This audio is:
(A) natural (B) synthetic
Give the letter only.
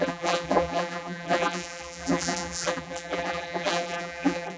B